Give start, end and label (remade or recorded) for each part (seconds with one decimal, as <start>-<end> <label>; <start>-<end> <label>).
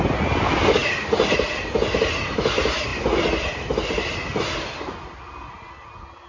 0.0-6.3 recorded